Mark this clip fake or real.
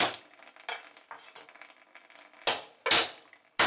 real